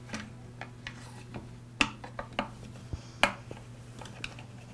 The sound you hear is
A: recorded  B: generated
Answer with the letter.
A